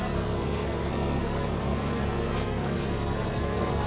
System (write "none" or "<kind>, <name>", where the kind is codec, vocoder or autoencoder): codec, SNAC